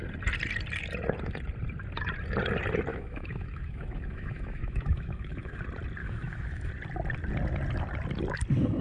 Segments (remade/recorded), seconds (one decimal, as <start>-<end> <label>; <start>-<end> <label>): 0.0-2.9 recorded; 2.9-5.6 remade; 5.6-6.0 recorded; 6.0-6.7 remade; 6.7-8.8 recorded